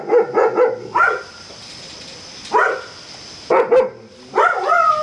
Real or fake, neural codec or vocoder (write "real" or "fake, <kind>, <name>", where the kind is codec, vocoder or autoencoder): real